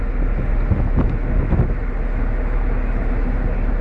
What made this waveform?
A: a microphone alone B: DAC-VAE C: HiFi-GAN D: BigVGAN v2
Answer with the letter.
A